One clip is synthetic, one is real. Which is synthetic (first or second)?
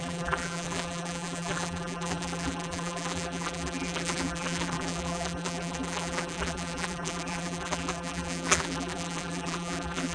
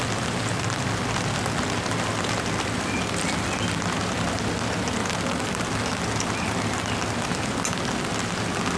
first